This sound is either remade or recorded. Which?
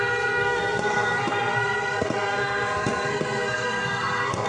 remade